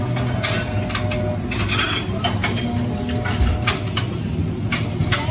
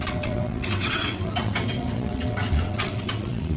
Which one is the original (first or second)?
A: first